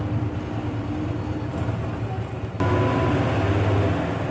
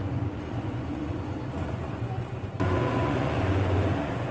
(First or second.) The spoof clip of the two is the second